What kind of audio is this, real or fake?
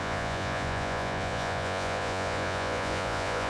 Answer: fake